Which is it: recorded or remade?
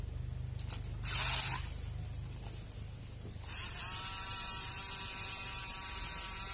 recorded